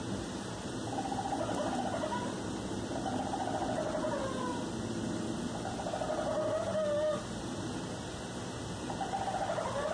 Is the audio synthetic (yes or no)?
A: no